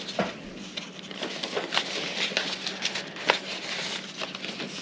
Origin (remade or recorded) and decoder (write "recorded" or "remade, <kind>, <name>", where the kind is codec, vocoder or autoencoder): recorded